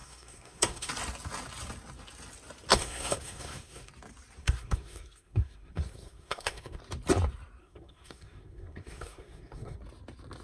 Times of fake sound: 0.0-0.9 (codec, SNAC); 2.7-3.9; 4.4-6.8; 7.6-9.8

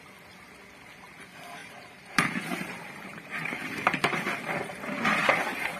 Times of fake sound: 1.6-4.2 (vocoder, BigVGAN v2)

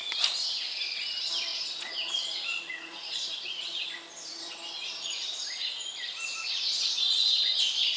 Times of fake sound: 1.5-3.6 (vocoder, Vocos)

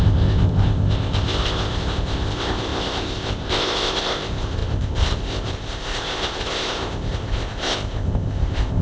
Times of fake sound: 0.0-8.8 (codec, ZipCodec)

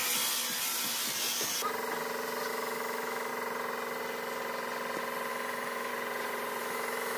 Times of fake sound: 2.5-3.3 (autoencoder, DAC-VAE); 5.3-5.9; 6.6-7.2

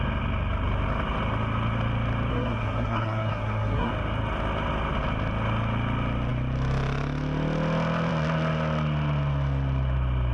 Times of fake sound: 2.3-3.9 (codec, SNAC)

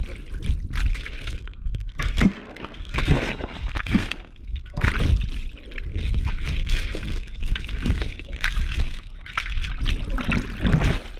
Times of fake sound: 0.9-4.9 (codec, SNAC); 5.9-9.7

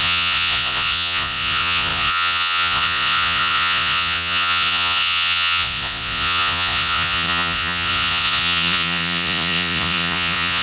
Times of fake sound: 0.0-10.6 (vocoder, Vocos)